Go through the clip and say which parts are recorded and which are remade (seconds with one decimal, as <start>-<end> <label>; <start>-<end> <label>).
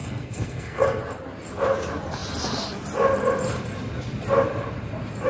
0.0-1.0 remade; 1.0-5.3 recorded